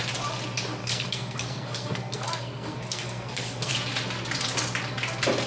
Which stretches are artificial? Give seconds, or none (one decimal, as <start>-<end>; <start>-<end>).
0.8-3.7